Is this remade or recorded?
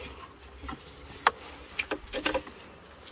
recorded